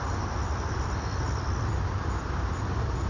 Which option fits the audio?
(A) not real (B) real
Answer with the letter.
B